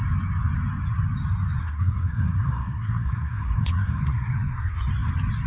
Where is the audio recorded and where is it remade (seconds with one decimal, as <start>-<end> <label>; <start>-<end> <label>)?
0.0-1.6 recorded; 1.6-4.9 remade; 4.9-5.5 recorded